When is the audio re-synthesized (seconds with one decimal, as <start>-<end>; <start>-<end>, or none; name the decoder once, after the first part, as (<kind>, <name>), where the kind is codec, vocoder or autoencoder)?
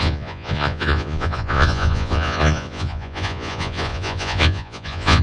0.0-5.2 (vocoder, Vocos)